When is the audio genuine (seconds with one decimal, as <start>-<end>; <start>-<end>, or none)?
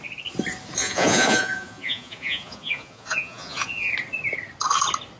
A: 0.0-0.8; 3.9-5.2